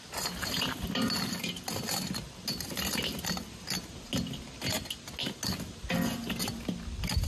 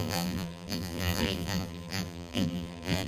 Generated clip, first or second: second